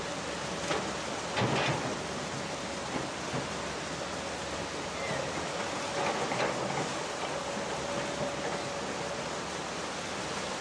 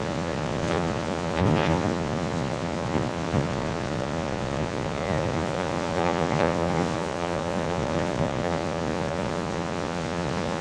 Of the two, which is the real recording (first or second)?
first